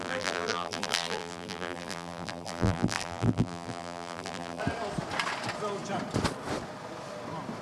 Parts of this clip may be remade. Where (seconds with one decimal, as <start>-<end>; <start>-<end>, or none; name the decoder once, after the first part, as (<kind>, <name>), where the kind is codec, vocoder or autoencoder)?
0.0-4.6 (vocoder, BigVGAN v2)